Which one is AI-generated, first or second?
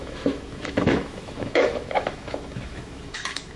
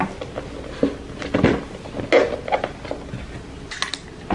first